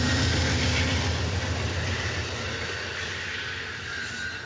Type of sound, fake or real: real